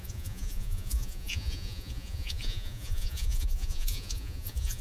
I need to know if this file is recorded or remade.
remade